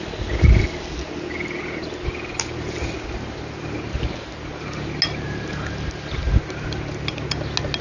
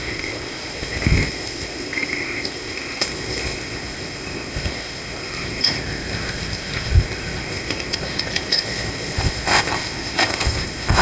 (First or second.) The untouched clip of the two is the first